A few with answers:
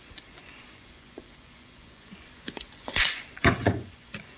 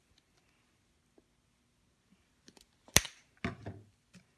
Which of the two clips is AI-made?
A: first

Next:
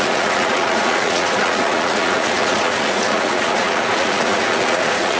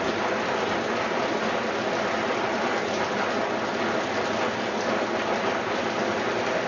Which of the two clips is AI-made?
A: first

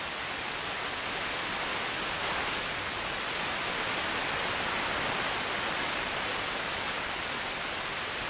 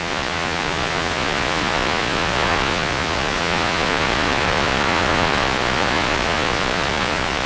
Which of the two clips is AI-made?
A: second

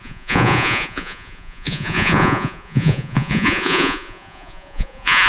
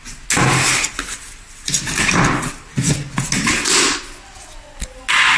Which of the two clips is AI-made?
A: first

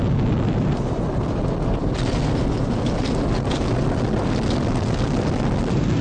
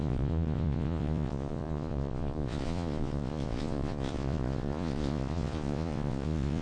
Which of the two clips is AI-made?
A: second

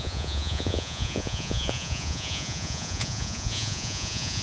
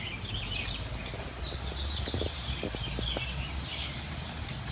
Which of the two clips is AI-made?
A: first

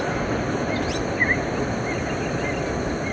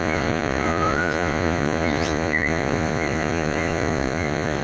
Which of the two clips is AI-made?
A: second